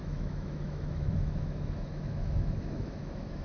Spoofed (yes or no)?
yes